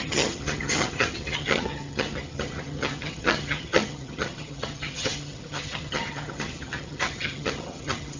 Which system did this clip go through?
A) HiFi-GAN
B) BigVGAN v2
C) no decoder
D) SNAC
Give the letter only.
A